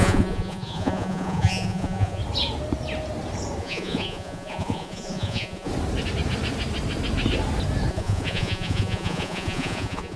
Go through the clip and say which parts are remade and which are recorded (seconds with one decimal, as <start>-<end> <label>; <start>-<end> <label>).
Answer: 0.0-2.2 remade; 2.2-3.6 recorded; 3.6-5.7 remade; 5.7-7.9 recorded; 7.9-10.2 remade